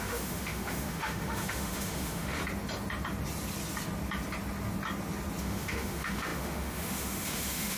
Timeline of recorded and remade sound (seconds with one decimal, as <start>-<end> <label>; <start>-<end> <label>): 0.0-2.4 remade; 2.4-5.4 recorded; 5.4-7.8 remade